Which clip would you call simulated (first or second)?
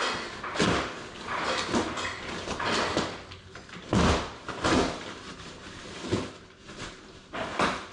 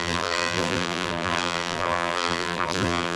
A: second